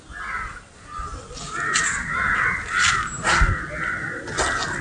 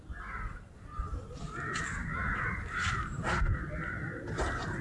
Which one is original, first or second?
first